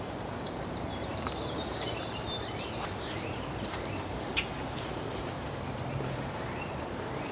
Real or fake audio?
fake